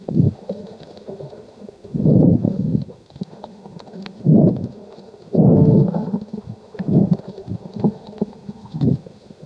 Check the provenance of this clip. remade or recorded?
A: remade